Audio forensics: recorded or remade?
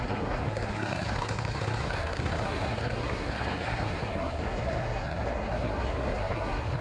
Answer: remade